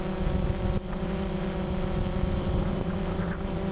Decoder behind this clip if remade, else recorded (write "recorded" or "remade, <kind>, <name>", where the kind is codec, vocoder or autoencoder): recorded